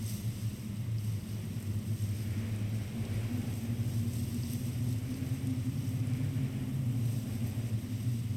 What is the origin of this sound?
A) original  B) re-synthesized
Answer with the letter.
A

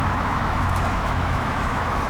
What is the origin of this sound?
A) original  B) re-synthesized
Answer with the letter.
B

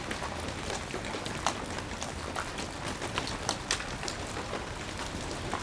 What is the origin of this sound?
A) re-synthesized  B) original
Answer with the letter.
B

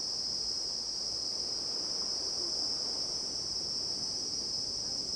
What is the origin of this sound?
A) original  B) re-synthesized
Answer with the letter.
A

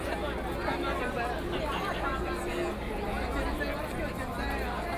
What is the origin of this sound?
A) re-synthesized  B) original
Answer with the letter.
B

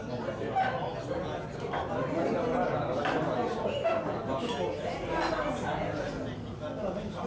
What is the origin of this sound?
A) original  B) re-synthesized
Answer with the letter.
A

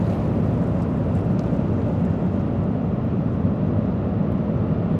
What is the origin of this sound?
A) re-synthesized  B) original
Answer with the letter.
B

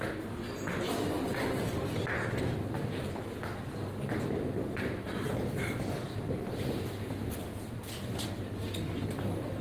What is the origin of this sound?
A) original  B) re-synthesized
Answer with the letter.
A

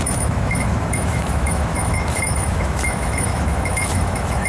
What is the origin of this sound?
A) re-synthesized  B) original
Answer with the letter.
A